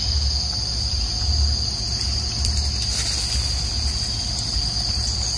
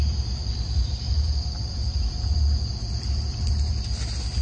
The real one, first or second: first